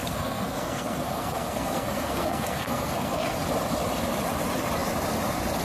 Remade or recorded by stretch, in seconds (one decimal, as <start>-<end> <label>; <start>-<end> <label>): 0.0-3.4 remade; 3.4-5.6 recorded